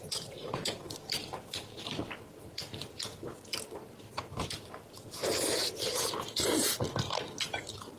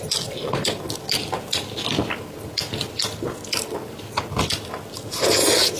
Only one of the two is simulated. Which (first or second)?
first